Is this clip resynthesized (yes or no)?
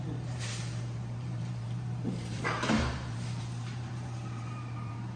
yes